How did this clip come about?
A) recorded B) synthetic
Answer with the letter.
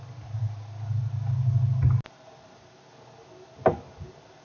A